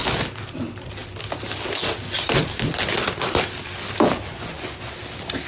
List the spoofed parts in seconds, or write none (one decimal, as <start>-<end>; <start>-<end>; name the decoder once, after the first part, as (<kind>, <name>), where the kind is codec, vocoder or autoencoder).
4.3-5.0 (vocoder, Vocos)